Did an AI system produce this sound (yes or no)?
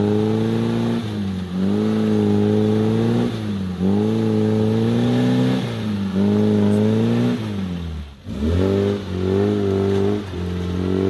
no